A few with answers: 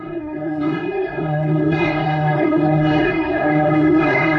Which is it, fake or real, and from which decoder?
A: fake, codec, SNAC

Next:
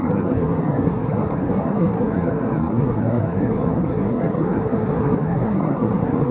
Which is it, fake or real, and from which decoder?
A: fake, codec, SNAC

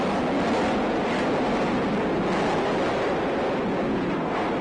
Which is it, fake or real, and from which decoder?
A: real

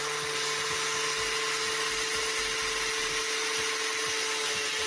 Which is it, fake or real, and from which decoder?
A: real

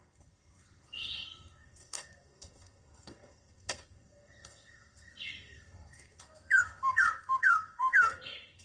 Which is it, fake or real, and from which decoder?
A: fake, codec, SNAC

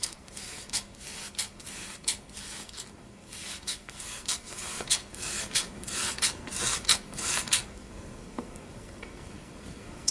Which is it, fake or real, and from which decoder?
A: fake, codec, SNAC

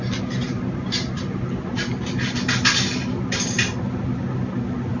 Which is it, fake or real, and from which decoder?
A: real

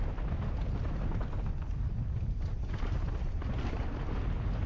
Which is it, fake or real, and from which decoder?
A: real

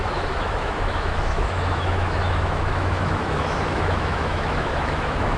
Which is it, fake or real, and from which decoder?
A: fake, autoencoder, DAC-VAE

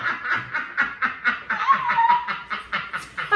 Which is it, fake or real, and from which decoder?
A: real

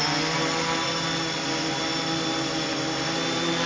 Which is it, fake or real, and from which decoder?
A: real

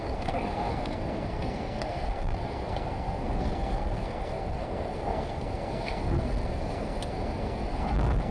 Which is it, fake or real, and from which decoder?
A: fake, codec, SNAC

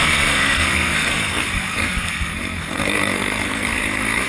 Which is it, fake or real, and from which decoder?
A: fake, codec, SNAC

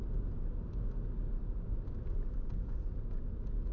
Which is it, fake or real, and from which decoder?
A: real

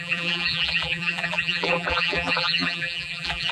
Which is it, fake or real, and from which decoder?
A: fake, vocoder, BigVGAN v2